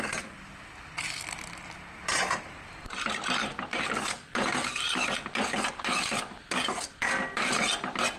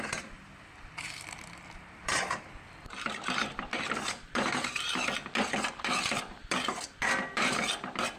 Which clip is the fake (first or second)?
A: second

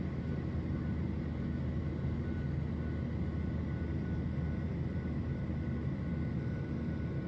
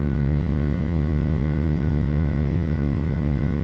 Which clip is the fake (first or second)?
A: second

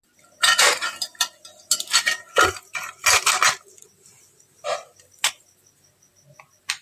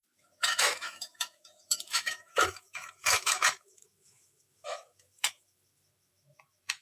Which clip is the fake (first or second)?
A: second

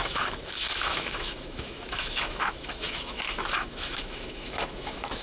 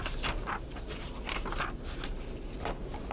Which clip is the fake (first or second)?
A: first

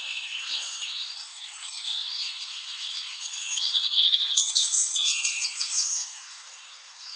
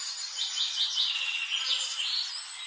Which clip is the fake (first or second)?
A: first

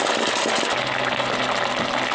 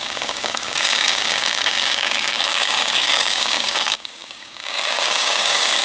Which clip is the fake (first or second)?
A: second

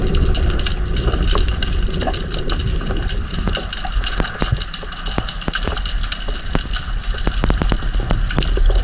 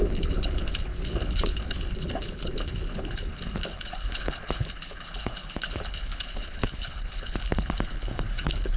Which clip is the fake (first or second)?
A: second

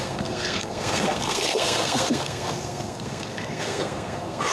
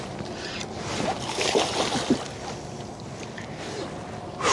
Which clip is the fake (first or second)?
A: first